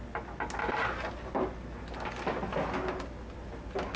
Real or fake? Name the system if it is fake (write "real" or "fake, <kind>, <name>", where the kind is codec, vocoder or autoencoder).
real